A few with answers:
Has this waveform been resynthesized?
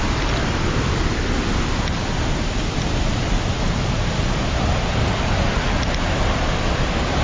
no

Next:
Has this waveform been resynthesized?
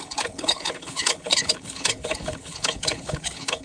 yes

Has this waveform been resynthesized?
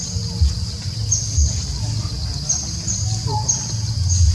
no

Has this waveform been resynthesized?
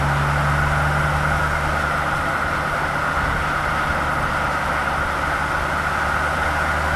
no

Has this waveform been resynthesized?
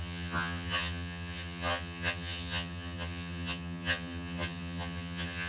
yes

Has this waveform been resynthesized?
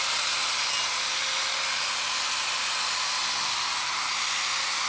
no